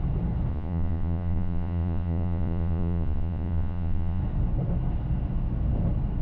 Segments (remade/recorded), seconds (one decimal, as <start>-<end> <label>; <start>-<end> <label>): 0.0-0.5 recorded; 0.5-4.2 remade; 4.2-6.2 recorded